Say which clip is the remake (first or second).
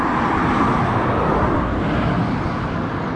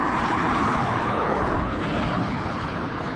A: second